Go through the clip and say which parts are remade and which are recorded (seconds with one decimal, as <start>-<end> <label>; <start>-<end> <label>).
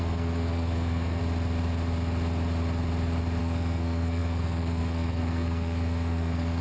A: 0.0-1.2 remade; 1.2-3.4 recorded; 3.4-6.6 remade